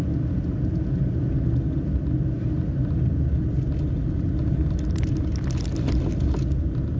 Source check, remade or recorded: recorded